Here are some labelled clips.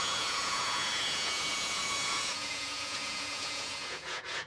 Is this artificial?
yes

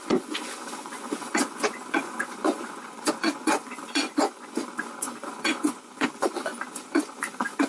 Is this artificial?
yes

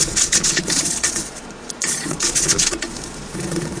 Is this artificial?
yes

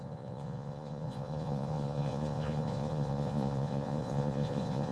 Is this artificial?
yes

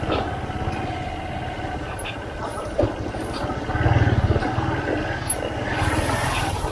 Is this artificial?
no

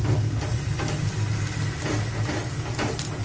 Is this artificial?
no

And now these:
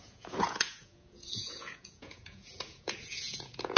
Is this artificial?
yes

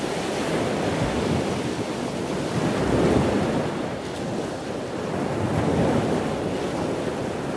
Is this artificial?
no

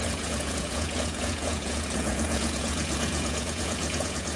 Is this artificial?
yes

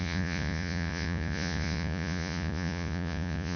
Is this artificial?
yes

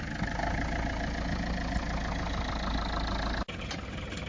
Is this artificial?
no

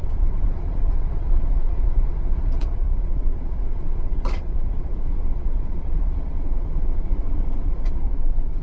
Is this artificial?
yes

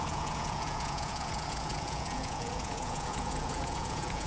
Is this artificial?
yes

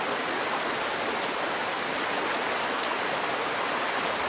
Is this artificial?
no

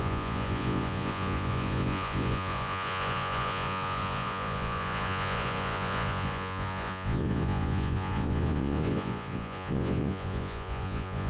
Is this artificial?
yes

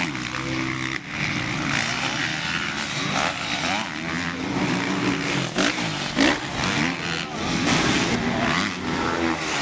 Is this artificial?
no